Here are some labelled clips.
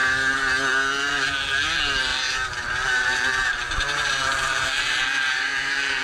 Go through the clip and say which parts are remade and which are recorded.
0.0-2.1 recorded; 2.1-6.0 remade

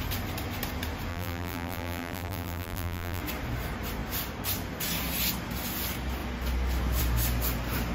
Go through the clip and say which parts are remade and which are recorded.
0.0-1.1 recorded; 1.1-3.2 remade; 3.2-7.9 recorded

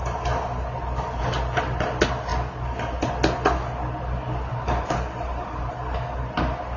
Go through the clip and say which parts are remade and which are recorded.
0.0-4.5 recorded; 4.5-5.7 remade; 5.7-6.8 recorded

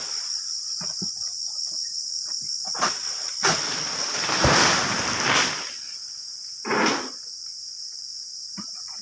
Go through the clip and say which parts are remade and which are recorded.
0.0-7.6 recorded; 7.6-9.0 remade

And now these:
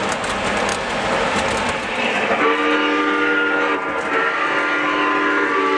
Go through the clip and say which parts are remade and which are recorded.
0.0-5.8 recorded

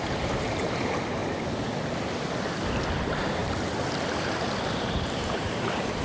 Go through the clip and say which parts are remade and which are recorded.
0.0-1.2 remade; 1.2-3.0 recorded; 3.0-3.4 remade; 3.4-5.0 recorded; 5.0-6.0 remade

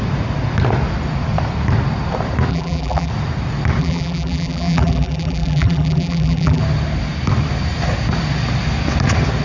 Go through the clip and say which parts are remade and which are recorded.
0.0-2.5 recorded; 2.5-3.1 remade; 3.1-3.8 recorded; 3.8-6.6 remade; 6.6-9.4 recorded